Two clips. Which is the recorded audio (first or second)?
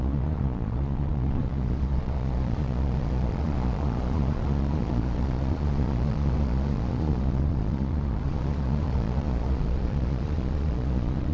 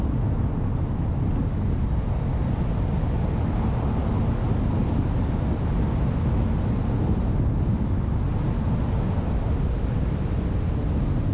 second